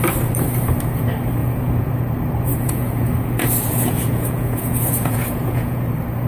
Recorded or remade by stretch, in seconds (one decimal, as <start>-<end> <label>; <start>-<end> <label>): 0.0-1.4 recorded; 1.4-2.1 remade; 2.1-2.5 recorded; 2.5-5.8 remade; 5.8-6.3 recorded